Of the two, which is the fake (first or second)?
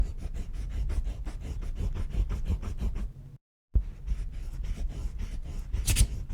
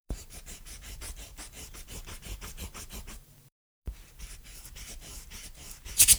second